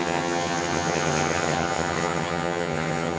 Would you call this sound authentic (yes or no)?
no